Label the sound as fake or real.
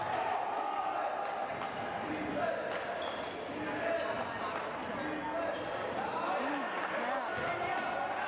real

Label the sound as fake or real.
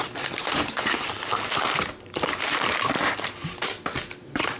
fake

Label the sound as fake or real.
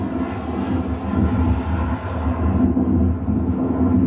real